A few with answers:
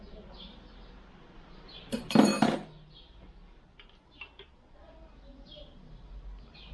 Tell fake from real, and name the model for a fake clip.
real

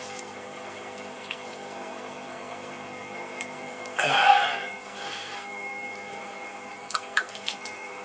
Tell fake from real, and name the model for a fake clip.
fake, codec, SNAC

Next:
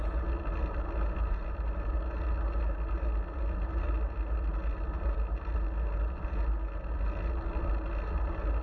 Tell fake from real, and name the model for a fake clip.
real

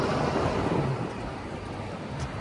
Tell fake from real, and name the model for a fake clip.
real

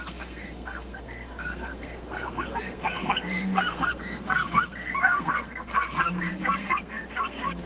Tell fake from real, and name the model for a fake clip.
fake, codec, SNAC